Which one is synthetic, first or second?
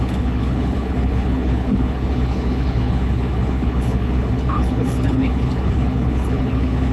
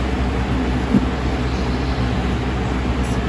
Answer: first